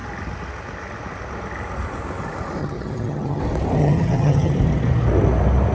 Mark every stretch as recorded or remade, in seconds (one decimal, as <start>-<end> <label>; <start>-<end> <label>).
0.0-2.6 recorded; 2.6-3.4 remade; 3.4-3.8 recorded; 3.8-4.5 remade; 4.5-5.7 recorded